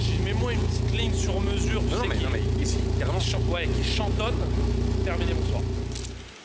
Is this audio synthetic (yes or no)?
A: no